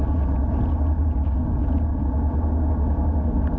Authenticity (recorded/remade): recorded